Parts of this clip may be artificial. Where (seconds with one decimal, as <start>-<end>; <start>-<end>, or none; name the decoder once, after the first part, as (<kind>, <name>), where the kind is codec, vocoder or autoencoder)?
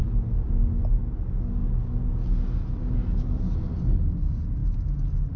none